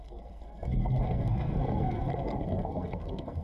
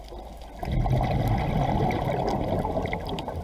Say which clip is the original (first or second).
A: second